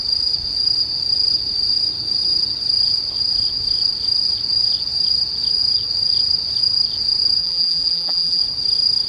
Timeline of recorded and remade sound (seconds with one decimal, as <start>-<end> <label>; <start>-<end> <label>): 0.0-7.4 recorded; 7.4-8.4 remade; 8.4-9.1 recorded